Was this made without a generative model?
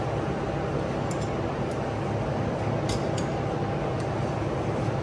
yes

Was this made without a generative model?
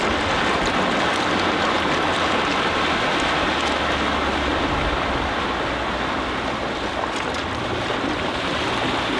yes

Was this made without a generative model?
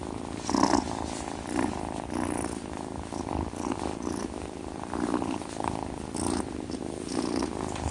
yes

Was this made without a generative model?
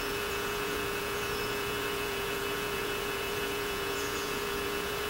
no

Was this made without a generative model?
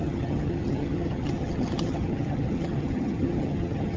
no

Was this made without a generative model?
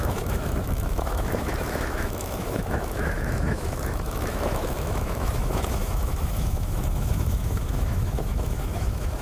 no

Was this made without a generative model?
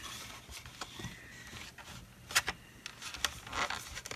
yes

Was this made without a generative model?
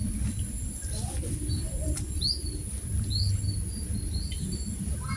yes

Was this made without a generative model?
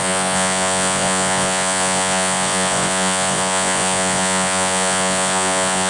no